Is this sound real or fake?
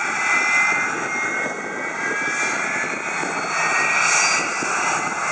real